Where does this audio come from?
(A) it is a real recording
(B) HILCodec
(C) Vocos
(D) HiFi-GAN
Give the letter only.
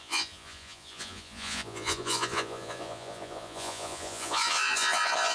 C